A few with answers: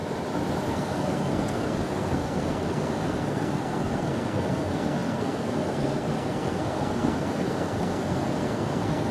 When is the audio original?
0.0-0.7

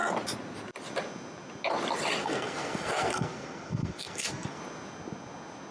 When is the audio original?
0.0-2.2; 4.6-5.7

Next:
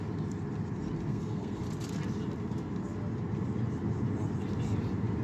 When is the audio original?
0.0-1.1; 1.6-5.2

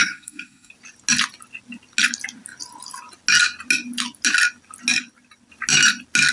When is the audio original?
0.7-6.3